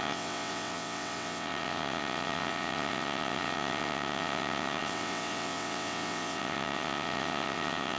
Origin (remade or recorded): remade